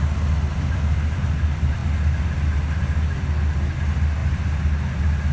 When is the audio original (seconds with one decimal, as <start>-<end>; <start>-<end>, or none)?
0.0-5.3